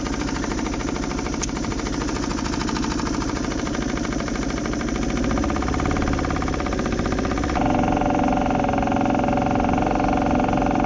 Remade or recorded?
recorded